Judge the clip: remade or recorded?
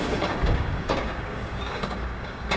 remade